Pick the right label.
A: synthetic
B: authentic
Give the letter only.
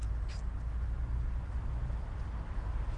B